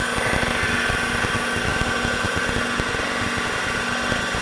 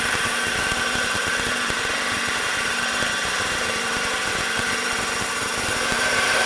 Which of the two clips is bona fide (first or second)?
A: first